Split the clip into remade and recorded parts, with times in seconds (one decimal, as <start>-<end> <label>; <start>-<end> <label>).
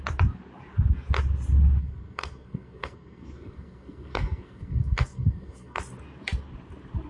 0.0-1.8 recorded; 1.8-5.8 remade; 5.8-7.1 recorded